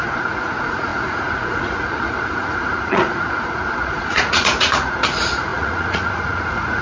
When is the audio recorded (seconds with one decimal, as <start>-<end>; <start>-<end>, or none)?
none